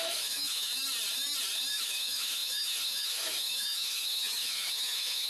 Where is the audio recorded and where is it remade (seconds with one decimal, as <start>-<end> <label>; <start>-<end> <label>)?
0.0-0.7 remade; 0.7-1.7 recorded; 1.7-5.3 remade